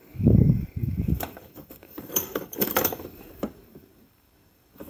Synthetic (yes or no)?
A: yes